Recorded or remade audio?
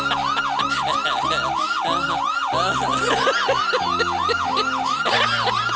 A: recorded